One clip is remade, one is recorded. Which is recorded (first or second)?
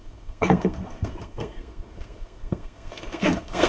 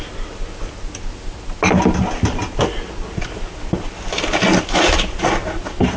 second